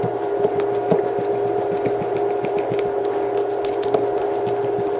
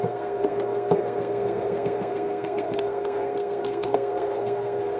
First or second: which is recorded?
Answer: first